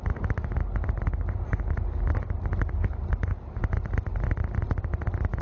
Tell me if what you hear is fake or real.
real